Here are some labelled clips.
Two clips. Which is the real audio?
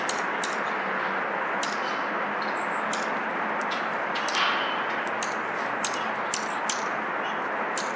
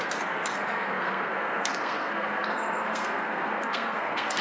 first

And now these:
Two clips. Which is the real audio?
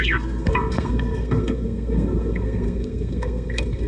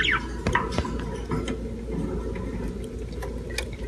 second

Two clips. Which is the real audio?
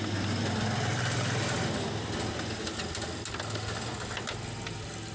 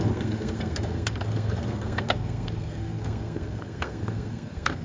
first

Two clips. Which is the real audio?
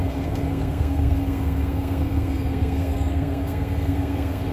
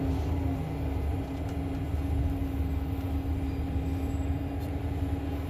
second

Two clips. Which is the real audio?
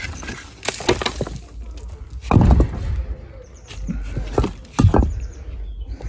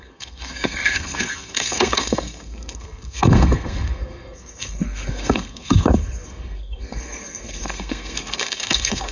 first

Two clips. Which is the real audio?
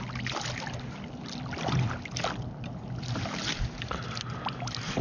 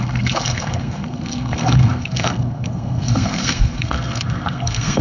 first